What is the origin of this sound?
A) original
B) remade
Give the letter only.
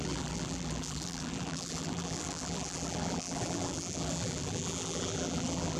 B